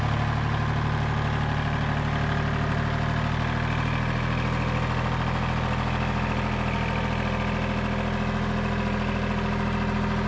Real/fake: real